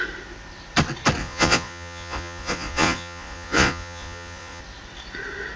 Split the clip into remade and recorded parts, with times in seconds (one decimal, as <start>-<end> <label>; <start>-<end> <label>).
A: 0.0-1.2 recorded; 1.2-4.6 remade; 4.6-5.6 recorded

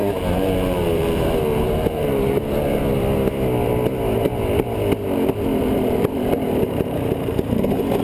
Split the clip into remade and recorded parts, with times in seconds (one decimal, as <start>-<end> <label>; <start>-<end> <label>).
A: 0.0-2.8 remade; 2.8-5.6 recorded; 5.6-8.0 remade

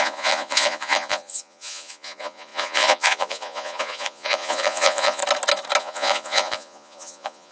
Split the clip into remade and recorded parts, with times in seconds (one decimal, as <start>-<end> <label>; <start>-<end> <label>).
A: 0.0-5.2 remade; 5.2-5.8 recorded; 5.8-7.5 remade

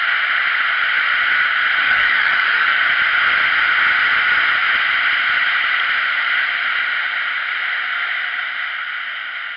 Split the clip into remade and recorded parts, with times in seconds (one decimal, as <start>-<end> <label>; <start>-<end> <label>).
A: 0.0-1.8 recorded; 1.8-2.8 remade; 2.8-9.6 recorded

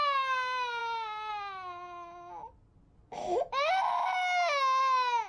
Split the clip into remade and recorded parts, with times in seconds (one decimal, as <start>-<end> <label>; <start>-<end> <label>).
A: 0.0-4.0 recorded; 4.0-4.8 remade; 4.8-5.3 recorded

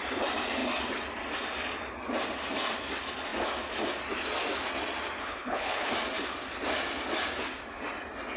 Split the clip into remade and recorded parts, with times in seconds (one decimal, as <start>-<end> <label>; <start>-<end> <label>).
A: 0.0-5.2 recorded; 5.2-5.9 remade; 5.9-8.4 recorded

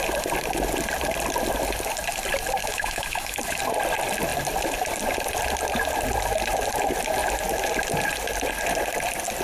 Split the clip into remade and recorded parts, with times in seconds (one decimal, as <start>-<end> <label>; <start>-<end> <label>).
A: 0.0-2.6 recorded; 2.6-3.6 remade; 3.6-9.4 recorded

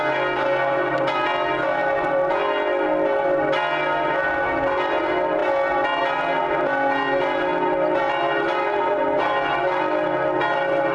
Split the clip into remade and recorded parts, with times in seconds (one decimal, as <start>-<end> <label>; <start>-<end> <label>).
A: 0.0-10.9 recorded